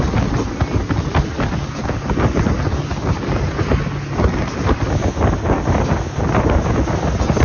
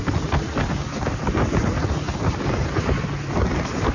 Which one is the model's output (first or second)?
second